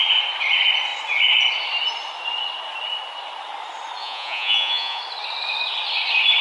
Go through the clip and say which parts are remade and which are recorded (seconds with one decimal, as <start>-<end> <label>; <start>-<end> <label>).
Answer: 0.0-4.0 recorded; 4.0-5.0 remade; 5.0-6.4 recorded